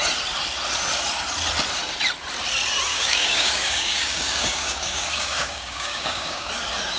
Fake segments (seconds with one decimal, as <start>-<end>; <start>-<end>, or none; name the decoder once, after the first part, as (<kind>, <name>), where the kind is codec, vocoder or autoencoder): 2.9-6.5 (codec, DAC)